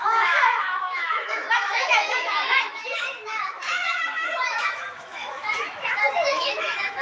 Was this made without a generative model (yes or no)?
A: no